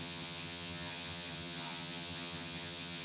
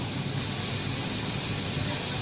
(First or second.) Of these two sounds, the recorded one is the second